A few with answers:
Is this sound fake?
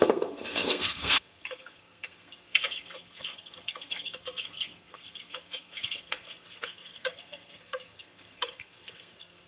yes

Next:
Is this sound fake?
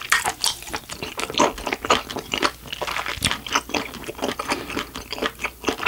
no